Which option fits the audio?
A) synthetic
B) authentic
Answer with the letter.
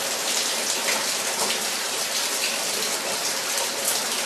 A